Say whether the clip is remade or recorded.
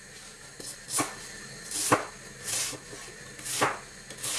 recorded